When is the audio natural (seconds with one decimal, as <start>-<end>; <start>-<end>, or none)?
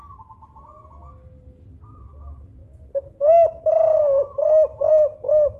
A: 0.0-5.6